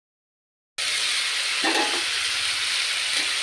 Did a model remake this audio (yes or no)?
no